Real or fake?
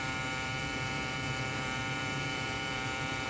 fake